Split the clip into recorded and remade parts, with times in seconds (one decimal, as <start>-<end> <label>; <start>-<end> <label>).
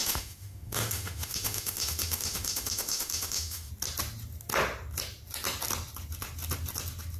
0.0-3.7 remade; 3.7-7.2 recorded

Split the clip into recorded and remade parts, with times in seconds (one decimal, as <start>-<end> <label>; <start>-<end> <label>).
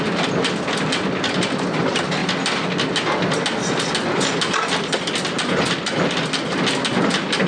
0.0-7.5 recorded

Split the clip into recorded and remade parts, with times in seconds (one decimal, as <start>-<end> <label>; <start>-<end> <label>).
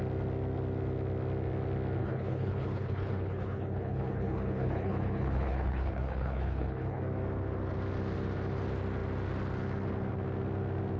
0.0-2.0 recorded; 2.0-7.0 remade; 7.0-11.0 recorded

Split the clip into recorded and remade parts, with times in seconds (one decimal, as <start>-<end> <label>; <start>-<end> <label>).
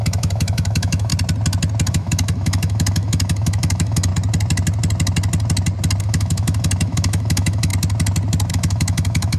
0.0-1.1 remade; 1.1-1.9 recorded; 1.9-4.1 remade; 4.1-6.0 recorded; 6.0-7.7 remade; 7.7-8.5 recorded; 8.5-9.4 remade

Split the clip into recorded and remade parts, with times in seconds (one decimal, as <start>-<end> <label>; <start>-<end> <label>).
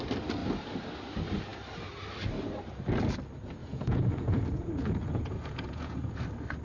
0.0-3.6 recorded; 3.6-6.0 remade; 6.0-6.6 recorded